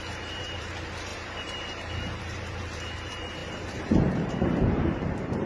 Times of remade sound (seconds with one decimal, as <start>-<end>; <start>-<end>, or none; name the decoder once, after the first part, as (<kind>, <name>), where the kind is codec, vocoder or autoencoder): 0.0-5.5 (vocoder, BigVGAN v2)